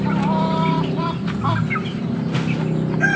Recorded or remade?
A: recorded